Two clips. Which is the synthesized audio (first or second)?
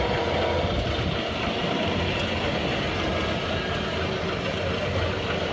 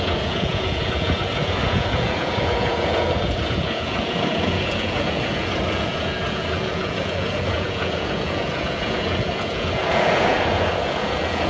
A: second